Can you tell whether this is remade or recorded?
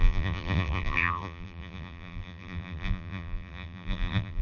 remade